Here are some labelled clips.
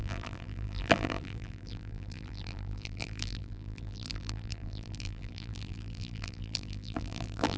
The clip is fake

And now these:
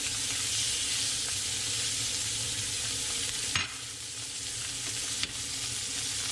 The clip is real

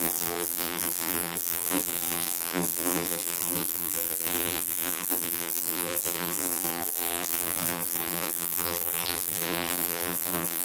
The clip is fake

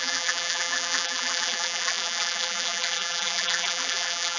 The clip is fake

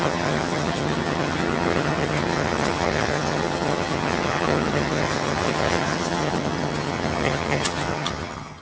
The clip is fake